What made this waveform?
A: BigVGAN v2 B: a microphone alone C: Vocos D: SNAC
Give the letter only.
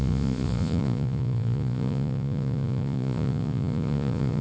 C